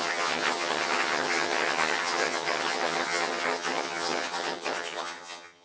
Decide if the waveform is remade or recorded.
remade